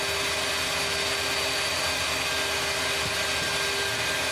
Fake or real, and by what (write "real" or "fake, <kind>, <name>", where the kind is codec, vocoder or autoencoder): real